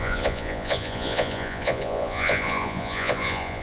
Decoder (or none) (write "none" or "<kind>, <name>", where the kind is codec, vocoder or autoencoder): vocoder, Vocos